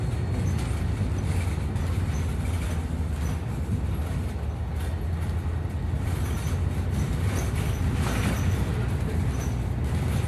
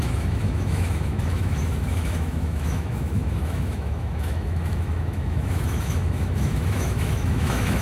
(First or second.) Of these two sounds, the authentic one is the first